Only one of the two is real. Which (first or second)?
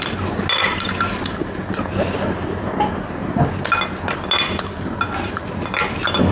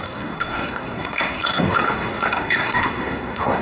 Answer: first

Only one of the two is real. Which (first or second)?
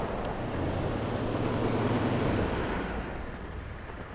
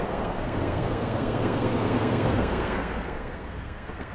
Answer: first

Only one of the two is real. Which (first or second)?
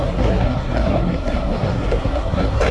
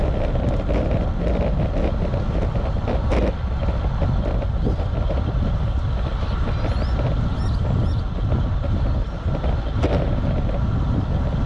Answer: second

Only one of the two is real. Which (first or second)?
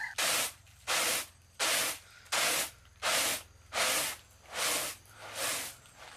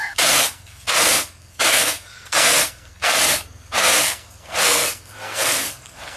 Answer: first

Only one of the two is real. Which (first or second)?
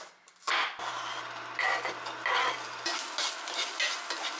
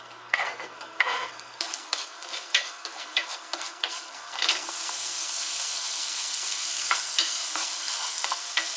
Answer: first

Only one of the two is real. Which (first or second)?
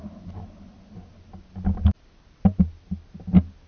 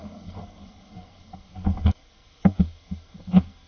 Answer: first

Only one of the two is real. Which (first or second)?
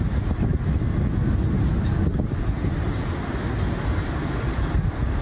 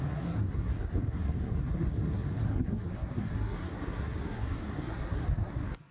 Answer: first